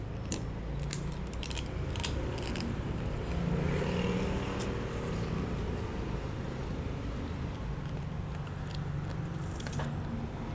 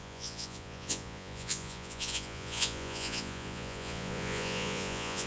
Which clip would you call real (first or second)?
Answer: first